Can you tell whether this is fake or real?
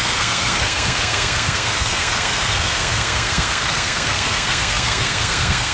fake